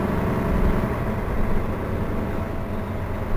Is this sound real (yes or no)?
yes